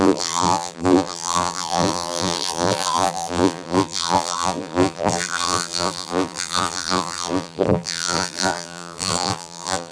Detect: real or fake fake